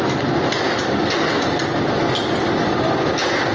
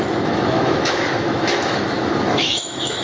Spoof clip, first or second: second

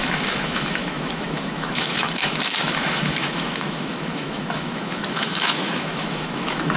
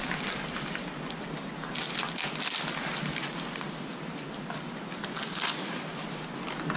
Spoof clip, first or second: first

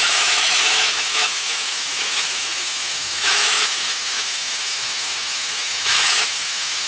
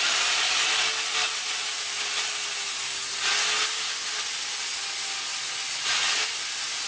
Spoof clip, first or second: first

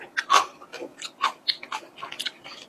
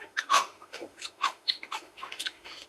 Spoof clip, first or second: second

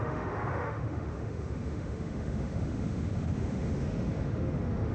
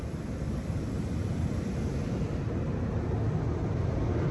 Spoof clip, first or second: first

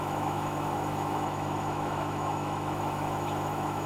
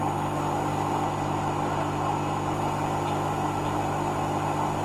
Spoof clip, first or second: first